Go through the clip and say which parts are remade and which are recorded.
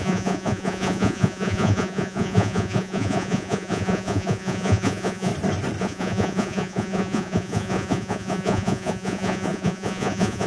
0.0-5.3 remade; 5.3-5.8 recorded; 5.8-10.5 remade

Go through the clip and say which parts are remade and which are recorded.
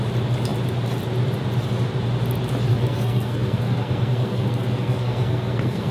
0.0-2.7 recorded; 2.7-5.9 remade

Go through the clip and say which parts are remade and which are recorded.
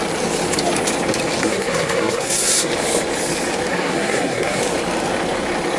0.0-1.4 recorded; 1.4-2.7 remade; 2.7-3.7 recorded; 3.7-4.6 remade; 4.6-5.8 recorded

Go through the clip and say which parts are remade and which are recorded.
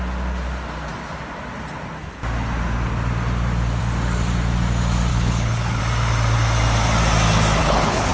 0.0-5.1 recorded; 5.1-5.8 remade; 5.8-7.6 recorded; 7.6-8.1 remade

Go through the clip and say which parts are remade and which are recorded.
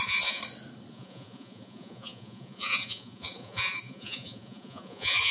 0.0-0.4 remade; 0.4-0.9 recorded; 0.9-5.3 remade